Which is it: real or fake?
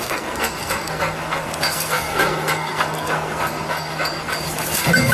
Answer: fake